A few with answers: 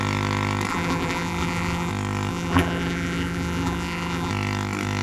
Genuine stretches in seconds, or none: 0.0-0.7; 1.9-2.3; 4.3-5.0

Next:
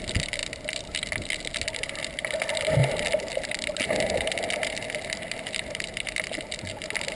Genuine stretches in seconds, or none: 0.0-7.1